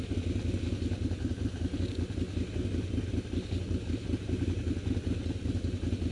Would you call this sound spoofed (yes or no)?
no